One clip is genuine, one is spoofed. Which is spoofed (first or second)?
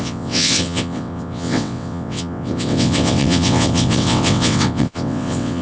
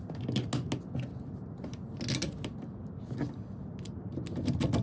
first